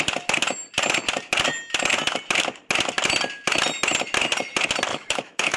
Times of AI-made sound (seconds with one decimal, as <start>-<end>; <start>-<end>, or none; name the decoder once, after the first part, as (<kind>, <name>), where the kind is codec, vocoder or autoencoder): 4.9-5.6 (autoencoder, DAC-VAE)